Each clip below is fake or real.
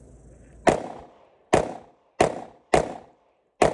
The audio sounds real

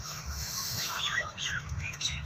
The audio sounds fake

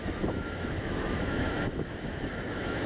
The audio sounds fake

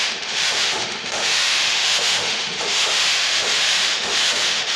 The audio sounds fake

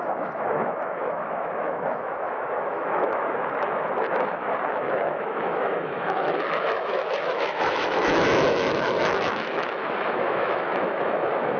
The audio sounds fake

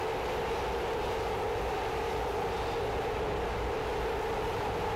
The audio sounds real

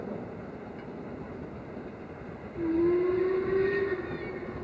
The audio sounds real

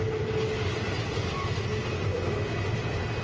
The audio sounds real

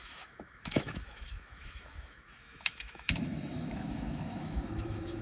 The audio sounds fake